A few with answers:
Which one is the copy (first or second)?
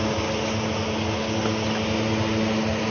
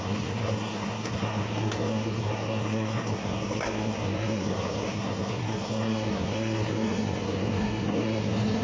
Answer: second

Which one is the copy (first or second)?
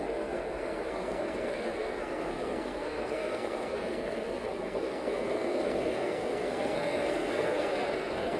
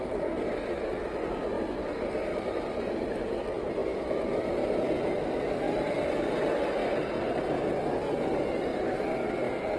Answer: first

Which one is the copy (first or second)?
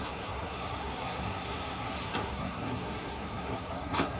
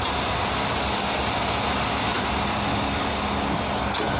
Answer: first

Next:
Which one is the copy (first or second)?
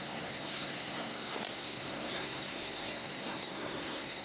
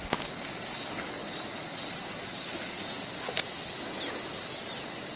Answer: first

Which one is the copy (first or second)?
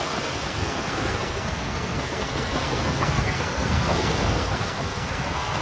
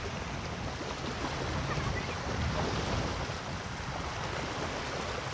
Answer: first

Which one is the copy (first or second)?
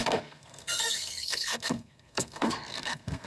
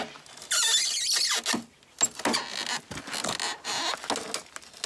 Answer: first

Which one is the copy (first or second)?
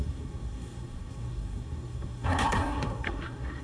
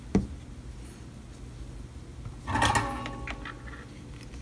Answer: first